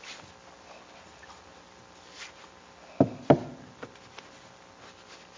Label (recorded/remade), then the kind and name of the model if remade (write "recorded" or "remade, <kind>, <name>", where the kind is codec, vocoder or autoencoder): recorded